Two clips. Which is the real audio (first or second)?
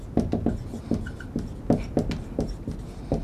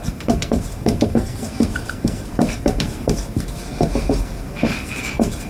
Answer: first